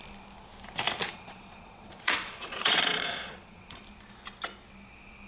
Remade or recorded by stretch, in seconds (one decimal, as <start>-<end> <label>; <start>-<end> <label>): 0.0-1.1 recorded; 1.1-3.8 remade; 3.8-5.3 recorded